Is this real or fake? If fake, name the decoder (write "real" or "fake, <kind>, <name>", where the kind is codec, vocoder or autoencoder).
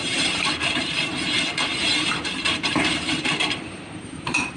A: fake, vocoder, BigVGAN v2